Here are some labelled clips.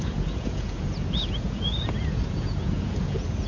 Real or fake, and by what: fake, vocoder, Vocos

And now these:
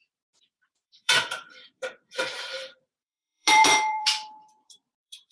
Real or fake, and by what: fake, vocoder, BigVGAN v2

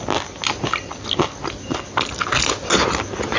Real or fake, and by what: real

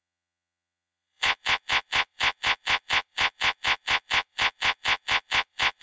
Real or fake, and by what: fake, vocoder, Vocos